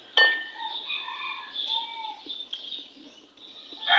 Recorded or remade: recorded